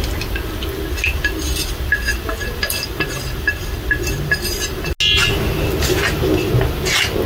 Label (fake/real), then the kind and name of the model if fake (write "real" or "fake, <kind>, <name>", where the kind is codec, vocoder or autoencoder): real